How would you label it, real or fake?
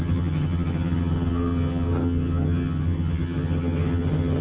fake